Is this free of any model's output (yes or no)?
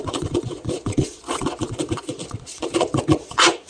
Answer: no